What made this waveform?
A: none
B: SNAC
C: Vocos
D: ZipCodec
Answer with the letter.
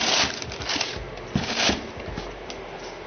A